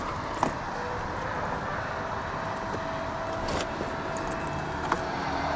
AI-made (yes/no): no